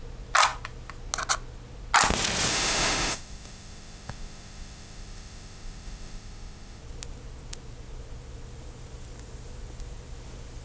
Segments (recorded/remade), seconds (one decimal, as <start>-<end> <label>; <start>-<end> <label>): 0.0-2.5 recorded; 2.5-6.8 remade; 6.8-10.6 recorded